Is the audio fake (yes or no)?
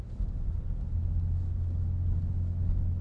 no